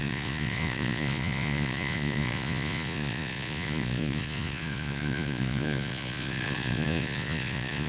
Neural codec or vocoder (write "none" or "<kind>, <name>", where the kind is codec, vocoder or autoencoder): vocoder, Vocos